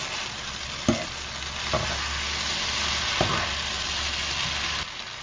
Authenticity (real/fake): real